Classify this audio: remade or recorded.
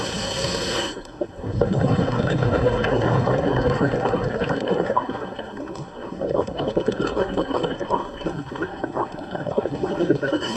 remade